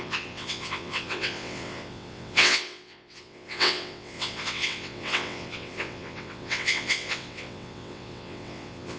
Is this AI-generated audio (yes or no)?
yes